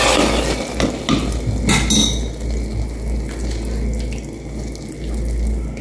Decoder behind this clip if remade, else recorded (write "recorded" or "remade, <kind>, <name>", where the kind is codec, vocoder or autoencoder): recorded